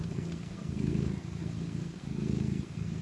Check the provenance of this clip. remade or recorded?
remade